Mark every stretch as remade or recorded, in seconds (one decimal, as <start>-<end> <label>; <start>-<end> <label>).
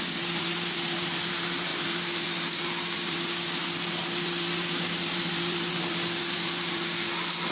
0.0-7.5 remade